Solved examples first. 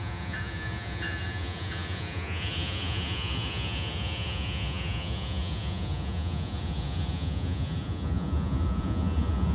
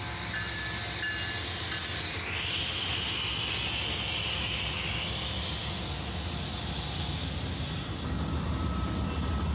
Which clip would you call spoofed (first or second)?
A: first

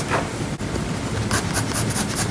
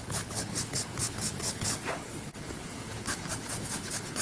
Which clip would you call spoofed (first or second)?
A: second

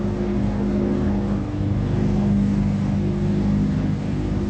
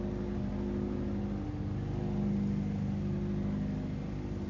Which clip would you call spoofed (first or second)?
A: first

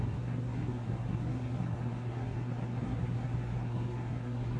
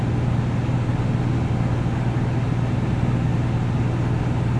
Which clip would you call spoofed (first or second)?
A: first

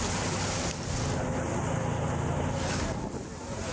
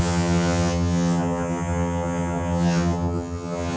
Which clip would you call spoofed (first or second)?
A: second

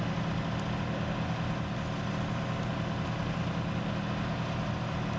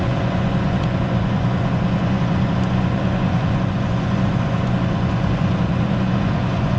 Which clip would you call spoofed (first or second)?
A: second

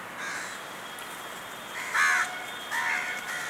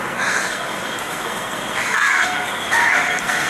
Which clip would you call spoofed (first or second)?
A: second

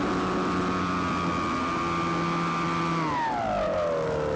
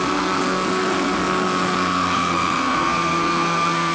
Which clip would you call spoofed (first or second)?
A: second